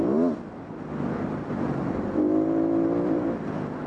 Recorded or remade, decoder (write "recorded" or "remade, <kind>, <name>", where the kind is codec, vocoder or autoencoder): recorded